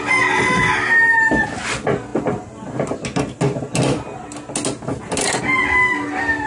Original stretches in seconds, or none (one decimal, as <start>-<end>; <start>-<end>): 0.0-6.5